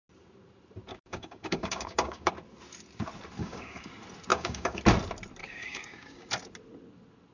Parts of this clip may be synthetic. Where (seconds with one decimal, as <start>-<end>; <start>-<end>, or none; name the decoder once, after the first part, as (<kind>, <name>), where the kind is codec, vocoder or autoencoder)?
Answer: 0.9-2.3 (codec, DAC); 3.4-3.9; 4.3-4.8; 5.4-6.3